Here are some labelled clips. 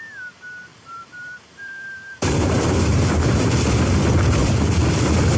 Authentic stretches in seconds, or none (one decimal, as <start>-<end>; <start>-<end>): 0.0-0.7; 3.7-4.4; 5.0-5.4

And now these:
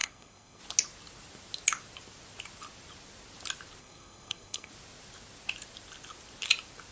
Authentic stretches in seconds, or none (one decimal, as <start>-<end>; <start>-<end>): 0.6-3.8; 4.7-6.9

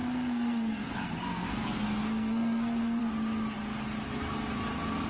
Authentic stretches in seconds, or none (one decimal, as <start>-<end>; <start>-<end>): 3.0-5.1

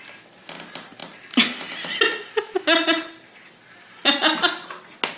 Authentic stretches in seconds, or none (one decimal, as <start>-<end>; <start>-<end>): 0.0-5.2

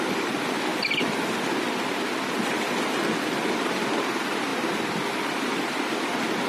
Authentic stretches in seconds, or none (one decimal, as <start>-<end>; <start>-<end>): 0.7-2.7